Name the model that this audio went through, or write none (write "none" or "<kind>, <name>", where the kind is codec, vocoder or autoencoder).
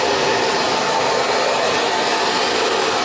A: none